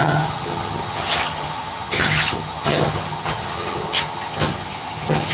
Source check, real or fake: fake